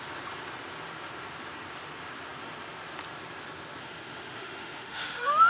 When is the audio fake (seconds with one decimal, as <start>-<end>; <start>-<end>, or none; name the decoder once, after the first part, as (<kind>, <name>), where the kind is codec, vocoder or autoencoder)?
3.8-5.5 (autoencoder, DAC-VAE)